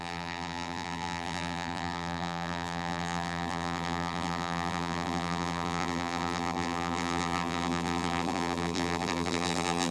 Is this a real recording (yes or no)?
no